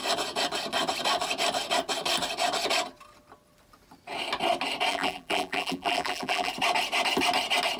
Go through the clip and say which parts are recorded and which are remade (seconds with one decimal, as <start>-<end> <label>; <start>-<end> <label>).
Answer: 0.0-4.9 recorded; 4.9-6.5 remade; 6.5-7.8 recorded